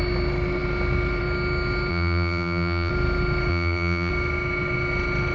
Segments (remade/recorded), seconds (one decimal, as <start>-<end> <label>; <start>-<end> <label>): 0.0-1.9 recorded; 1.9-2.9 remade; 2.9-3.5 recorded; 3.5-4.1 remade; 4.1-5.3 recorded